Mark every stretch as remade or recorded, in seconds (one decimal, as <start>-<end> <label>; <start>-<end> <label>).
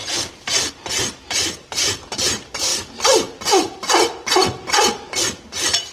0.0-0.7 recorded; 0.7-2.7 remade; 2.7-5.2 recorded; 5.2-5.9 remade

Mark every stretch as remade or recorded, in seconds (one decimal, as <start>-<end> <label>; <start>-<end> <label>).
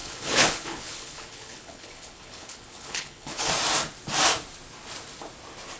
0.0-3.5 remade; 3.5-5.8 recorded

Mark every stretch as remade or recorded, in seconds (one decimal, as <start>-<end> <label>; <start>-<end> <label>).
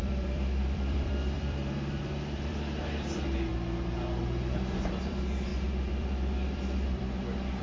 0.0-3.5 remade; 3.5-5.0 recorded; 5.0-7.6 remade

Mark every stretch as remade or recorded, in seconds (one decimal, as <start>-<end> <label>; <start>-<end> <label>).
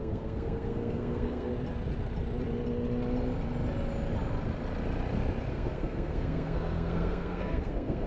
0.0-1.5 remade; 1.5-5.5 recorded; 5.5-8.1 remade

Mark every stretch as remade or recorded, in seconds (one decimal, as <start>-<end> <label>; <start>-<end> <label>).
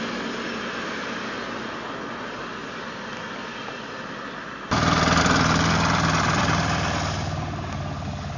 0.0-8.4 recorded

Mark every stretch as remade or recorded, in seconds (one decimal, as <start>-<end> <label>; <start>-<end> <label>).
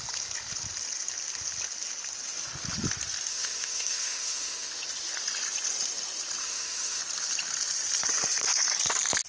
0.0-3.3 recorded; 3.3-4.7 remade; 4.7-6.4 recorded; 6.4-7.0 remade; 7.0-9.3 recorded